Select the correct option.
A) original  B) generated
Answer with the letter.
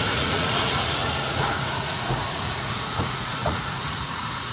B